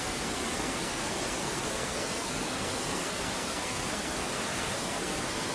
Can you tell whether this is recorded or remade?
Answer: remade